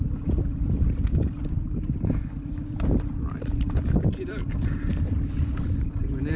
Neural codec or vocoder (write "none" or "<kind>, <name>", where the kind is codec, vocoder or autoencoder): none